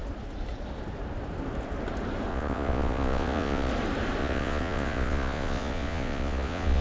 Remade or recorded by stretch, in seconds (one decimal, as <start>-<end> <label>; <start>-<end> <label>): 0.0-2.3 recorded; 2.3-3.7 remade; 3.7-4.2 recorded; 4.2-6.8 remade